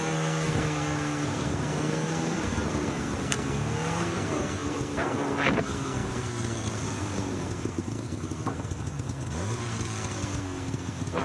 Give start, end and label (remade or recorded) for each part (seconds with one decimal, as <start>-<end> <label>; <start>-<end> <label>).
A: 0.0-11.2 remade